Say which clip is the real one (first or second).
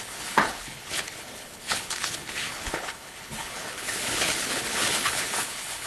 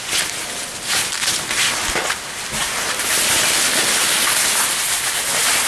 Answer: second